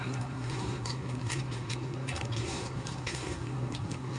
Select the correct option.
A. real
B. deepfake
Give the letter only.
B